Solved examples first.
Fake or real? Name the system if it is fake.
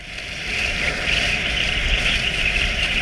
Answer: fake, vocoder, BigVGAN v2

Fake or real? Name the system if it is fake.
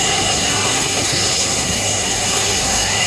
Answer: fake, codec, SNAC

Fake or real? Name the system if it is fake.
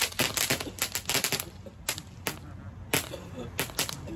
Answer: real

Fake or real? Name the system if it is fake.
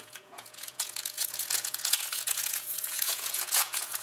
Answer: fake, vocoder, Vocos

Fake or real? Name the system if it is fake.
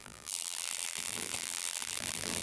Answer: fake, vocoder, BigVGAN v2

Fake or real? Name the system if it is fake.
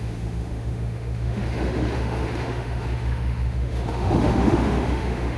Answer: fake, autoencoder, DAC-VAE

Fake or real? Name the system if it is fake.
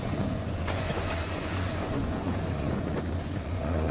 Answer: fake, vocoder, Vocos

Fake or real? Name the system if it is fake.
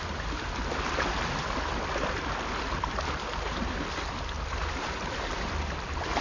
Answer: fake, vocoder, BigVGAN v2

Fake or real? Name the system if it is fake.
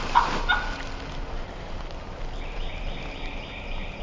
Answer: real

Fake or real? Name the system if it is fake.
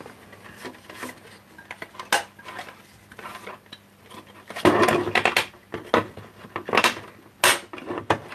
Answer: real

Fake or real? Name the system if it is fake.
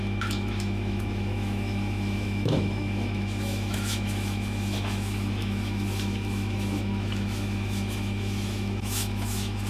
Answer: fake, autoencoder, DAC-VAE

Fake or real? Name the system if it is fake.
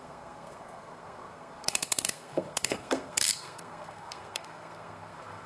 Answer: fake, codec, SNAC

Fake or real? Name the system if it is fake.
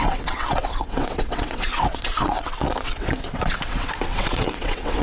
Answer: fake, vocoder, WaveNeXt